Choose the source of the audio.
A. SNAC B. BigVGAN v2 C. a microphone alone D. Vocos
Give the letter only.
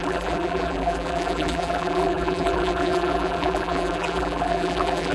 B